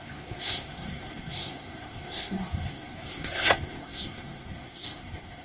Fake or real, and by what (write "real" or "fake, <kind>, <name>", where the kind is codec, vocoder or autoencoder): fake, codec, SNAC